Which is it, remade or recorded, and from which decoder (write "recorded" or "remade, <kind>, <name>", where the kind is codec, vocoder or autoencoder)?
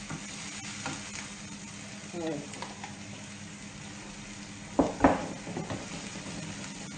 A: recorded